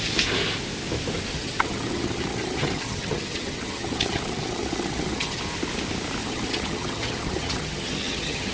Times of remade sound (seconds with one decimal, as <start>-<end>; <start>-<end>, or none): 1.3-5.4; 6.2-8.5